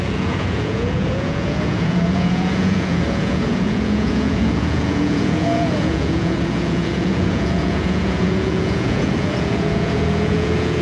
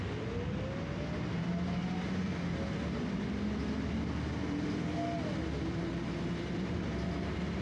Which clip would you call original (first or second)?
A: second